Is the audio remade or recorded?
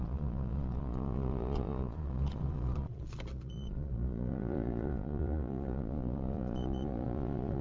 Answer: remade